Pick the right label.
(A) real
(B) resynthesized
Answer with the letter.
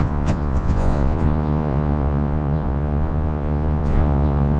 B